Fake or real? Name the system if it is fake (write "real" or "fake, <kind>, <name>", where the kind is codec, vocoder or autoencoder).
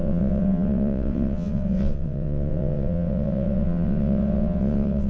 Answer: fake, vocoder, WaveNeXt